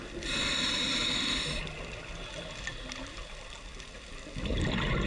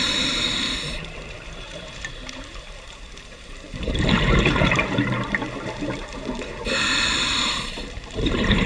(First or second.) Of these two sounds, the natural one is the first